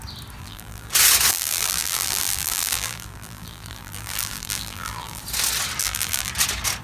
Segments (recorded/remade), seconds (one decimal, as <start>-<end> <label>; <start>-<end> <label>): 0.0-0.4 recorded; 0.4-0.9 remade; 0.9-1.3 recorded; 1.3-5.2 remade; 5.2-5.8 recorded; 5.8-6.3 remade; 6.3-6.8 recorded